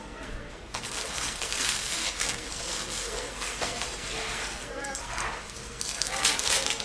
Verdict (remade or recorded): remade